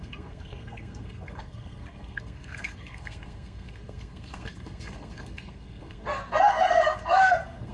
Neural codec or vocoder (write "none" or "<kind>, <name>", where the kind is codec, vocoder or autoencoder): codec, SNAC